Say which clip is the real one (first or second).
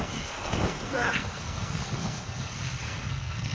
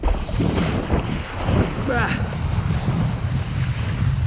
second